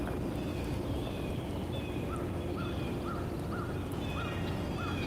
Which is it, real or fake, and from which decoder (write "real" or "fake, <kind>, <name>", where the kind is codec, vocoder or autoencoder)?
real